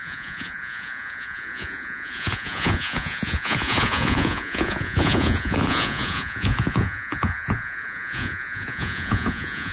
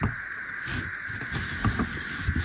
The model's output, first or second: first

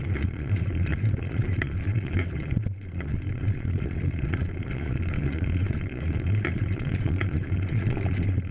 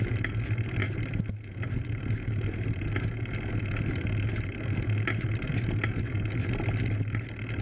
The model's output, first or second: first